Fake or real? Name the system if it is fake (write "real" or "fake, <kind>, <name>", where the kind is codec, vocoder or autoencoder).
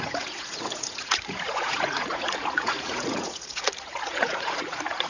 fake, vocoder, Vocos